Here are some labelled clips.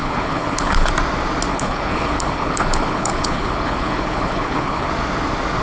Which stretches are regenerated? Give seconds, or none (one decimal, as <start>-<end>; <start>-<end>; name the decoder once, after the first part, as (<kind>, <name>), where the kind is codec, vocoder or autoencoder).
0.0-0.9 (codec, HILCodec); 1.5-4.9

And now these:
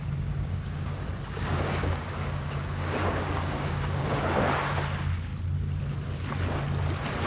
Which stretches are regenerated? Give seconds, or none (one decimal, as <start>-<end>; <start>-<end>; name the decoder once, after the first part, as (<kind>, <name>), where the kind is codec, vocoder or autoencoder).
0.0-4.4 (codec, DAC)

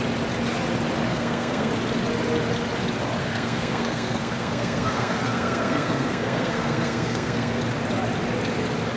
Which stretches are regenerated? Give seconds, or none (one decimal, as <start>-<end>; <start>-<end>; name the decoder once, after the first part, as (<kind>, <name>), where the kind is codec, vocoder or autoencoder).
1.1-1.7 (codec, SNAC); 3.2-7.6

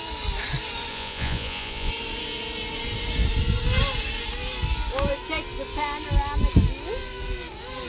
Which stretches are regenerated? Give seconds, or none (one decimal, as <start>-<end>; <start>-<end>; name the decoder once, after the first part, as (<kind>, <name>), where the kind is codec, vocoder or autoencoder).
0.9-1.9 (vocoder, Vocos)

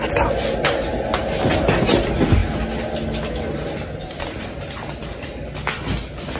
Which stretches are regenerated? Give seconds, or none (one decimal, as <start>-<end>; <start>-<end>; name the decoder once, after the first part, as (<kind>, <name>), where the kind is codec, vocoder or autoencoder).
none

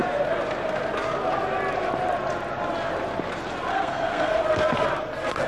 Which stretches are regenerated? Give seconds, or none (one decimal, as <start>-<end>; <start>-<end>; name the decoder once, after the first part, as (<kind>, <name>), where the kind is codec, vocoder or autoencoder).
3.7-4.4 (codec, SNAC)